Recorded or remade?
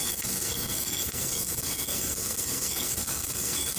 remade